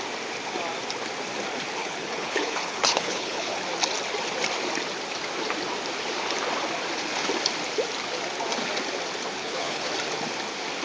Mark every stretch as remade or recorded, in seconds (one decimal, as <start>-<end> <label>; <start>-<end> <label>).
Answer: 0.0-1.8 recorded; 1.8-3.6 remade; 3.6-9.4 recorded; 9.4-9.9 remade; 9.9-10.8 recorded